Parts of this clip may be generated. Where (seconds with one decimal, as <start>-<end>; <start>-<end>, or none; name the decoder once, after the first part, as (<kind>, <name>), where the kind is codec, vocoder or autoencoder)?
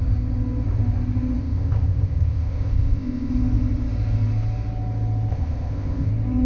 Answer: 1.4-3.3 (codec, ZipCodec); 5.3-6.1